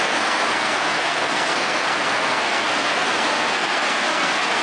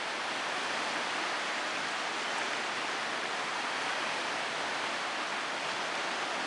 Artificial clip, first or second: first